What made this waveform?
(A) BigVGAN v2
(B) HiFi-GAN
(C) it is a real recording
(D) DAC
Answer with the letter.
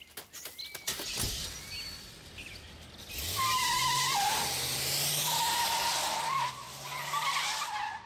C